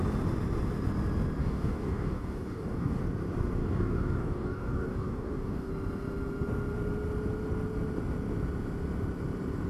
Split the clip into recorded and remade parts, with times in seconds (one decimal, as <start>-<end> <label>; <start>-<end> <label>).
0.0-1.4 recorded; 1.4-3.0 remade; 3.0-3.6 recorded; 3.6-5.7 remade; 5.7-9.7 recorded